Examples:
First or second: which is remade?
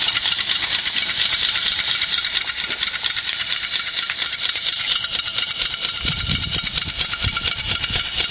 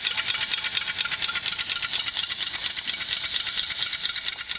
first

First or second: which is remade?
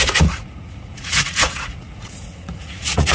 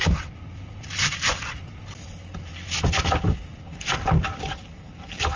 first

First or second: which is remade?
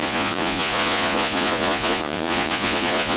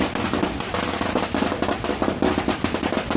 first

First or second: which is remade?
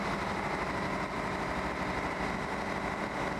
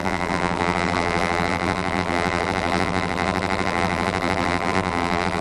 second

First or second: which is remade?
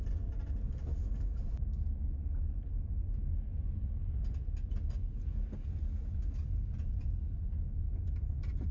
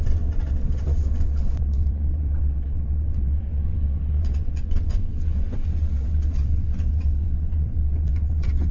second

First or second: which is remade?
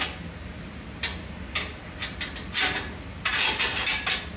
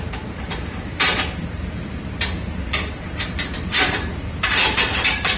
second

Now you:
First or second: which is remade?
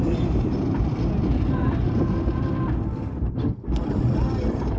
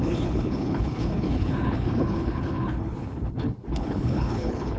second